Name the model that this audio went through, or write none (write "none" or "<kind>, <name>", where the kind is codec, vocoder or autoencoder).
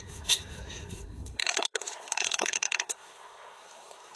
codec, SNAC